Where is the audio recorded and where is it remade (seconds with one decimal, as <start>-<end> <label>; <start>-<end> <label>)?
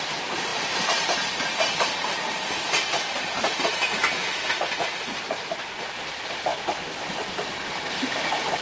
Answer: 0.0-4.2 remade; 4.2-4.7 recorded; 4.7-8.6 remade